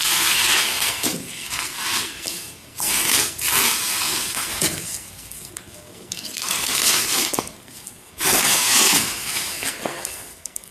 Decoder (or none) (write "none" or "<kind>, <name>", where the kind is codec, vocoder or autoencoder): codec, SNAC